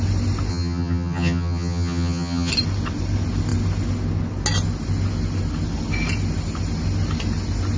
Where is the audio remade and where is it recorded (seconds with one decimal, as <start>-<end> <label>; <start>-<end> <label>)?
0.0-0.5 recorded; 0.5-2.5 remade; 2.5-7.8 recorded